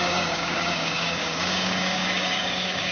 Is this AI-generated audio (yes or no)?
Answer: yes